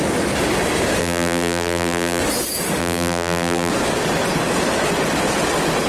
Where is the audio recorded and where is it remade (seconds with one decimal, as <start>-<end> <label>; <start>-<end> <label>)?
0.0-1.0 recorded; 1.0-2.2 remade; 2.2-2.8 recorded; 2.8-3.7 remade; 3.7-5.9 recorded